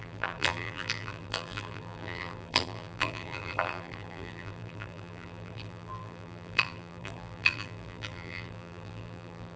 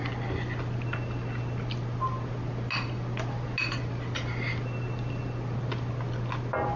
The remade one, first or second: first